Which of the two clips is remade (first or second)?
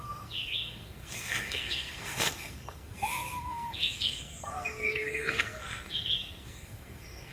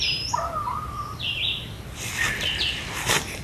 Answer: first